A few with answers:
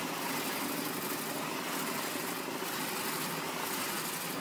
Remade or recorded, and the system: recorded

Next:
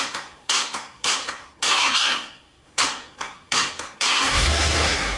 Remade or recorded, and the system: remade, codec, SNAC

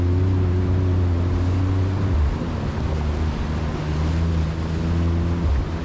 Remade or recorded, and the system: recorded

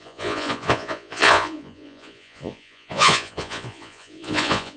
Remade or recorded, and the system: remade, vocoder, Vocos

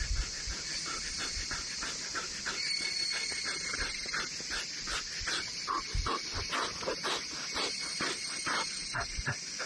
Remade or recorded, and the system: recorded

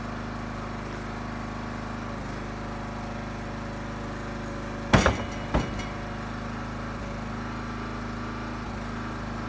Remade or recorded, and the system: recorded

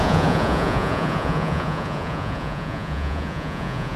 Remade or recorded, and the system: remade, vocoder, Vocos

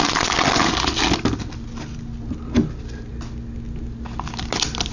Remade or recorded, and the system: recorded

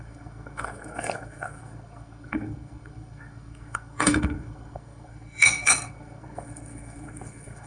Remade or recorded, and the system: remade, codec, SNAC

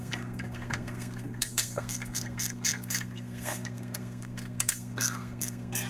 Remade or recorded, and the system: remade, codec, SNAC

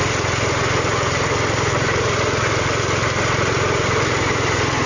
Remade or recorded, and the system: recorded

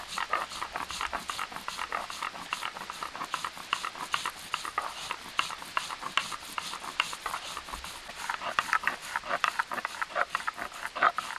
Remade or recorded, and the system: recorded